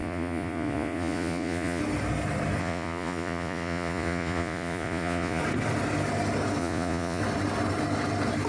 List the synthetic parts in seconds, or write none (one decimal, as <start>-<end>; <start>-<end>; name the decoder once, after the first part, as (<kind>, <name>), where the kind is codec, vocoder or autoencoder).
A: 0.0-1.8 (vocoder, Vocos); 2.6-5.4; 6.6-7.2